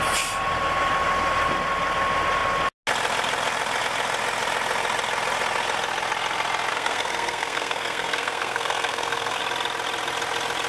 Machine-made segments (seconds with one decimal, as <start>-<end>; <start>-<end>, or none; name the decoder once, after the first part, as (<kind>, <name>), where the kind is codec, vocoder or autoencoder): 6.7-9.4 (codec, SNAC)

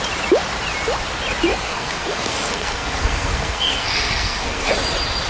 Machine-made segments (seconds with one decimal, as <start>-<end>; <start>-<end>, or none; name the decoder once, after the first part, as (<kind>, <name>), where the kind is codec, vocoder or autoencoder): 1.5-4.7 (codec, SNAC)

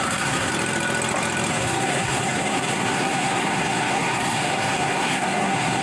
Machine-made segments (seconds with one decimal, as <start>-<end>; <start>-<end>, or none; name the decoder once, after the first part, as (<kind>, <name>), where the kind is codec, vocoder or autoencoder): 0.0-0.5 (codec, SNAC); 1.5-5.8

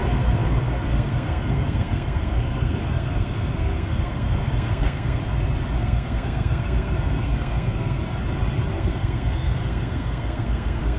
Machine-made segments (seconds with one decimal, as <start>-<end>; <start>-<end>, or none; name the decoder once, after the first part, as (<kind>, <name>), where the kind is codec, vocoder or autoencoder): 0.0-5.2 (codec, SNAC); 5.8-8.0; 8.7-11.0